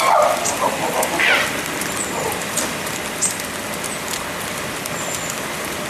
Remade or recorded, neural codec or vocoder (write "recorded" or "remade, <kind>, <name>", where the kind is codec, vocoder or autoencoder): recorded